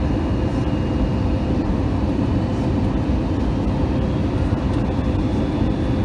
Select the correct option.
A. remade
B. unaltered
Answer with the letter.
B